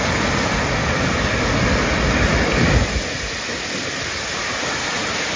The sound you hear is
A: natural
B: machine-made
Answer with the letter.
A